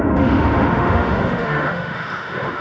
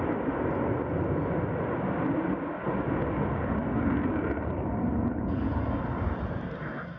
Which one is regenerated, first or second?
first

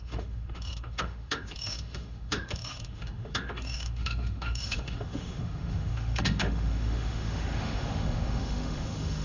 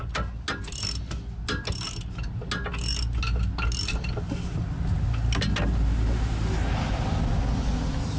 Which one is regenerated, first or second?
first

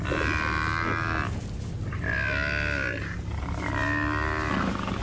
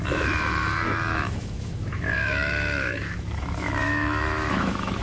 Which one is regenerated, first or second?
second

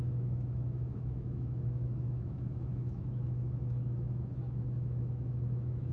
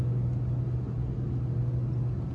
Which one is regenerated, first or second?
first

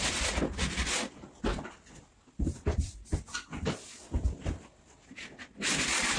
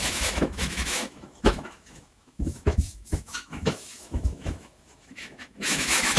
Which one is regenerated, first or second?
second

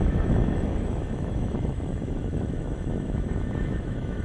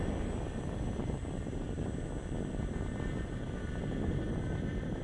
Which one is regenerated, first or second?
first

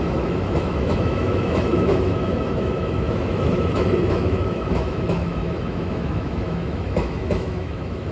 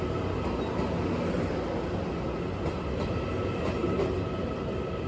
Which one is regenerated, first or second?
first